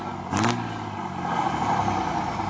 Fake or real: real